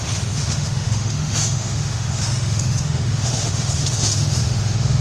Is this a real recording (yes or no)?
no